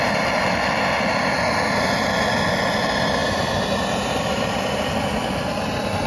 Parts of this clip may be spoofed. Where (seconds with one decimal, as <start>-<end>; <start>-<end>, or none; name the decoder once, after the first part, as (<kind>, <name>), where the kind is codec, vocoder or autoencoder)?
3.2-4.8 (vocoder, BigVGAN v2)